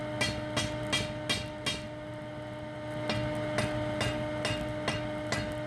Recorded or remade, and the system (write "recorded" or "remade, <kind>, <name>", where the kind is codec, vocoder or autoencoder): recorded